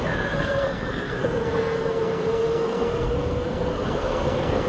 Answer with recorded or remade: remade